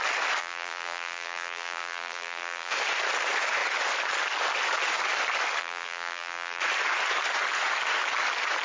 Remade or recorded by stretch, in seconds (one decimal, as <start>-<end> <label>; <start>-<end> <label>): 0.0-0.4 recorded; 0.4-2.7 remade; 2.7-5.6 recorded; 5.6-6.6 remade; 6.6-8.6 recorded